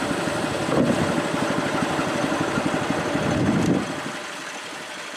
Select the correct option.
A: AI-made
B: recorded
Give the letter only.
B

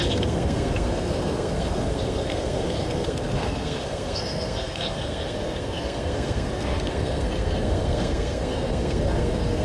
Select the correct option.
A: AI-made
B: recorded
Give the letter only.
A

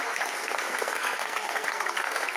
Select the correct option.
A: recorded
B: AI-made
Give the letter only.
B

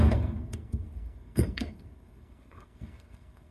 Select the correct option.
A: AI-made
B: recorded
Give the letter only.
A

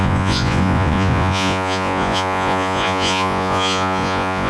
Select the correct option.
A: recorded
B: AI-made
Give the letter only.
B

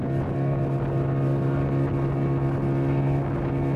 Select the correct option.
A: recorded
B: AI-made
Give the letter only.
A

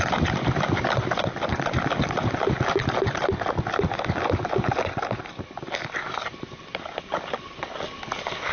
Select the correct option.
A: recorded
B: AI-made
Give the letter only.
A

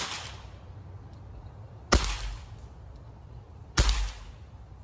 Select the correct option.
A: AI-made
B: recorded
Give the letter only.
B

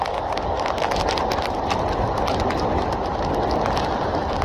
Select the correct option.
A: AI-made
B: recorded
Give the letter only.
B